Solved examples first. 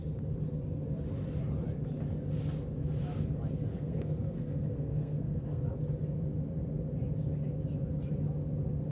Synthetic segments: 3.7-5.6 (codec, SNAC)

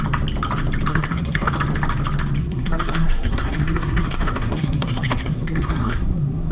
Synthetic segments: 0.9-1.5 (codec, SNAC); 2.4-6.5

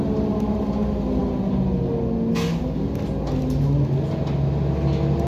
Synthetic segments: none

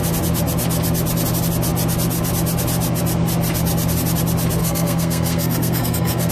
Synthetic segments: 4.6-6.3 (codec, SNAC)